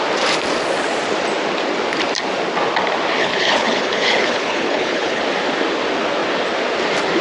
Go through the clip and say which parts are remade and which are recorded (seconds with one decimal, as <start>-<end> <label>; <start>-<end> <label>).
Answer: 0.0-3.2 recorded; 3.2-5.2 remade; 5.2-7.2 recorded